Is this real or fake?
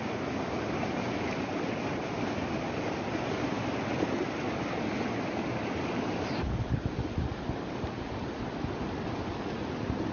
real